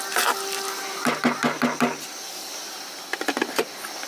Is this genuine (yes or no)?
yes